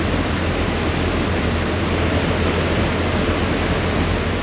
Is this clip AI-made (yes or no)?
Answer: no